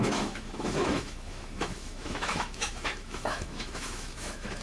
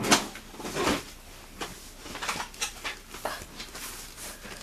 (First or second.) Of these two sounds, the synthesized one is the first